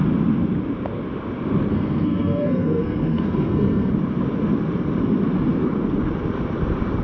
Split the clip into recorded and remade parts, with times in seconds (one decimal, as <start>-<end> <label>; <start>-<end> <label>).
0.0-1.7 recorded; 1.7-3.9 remade; 3.9-7.0 recorded